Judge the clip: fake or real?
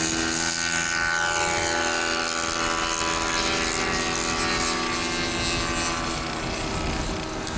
real